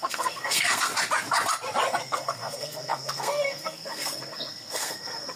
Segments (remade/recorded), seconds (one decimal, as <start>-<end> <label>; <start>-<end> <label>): 0.0-0.9 remade; 0.9-2.0 recorded; 2.0-5.4 remade